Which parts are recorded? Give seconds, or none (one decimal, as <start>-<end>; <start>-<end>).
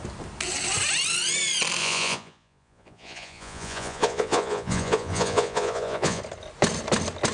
0.0-1.8; 6.2-7.3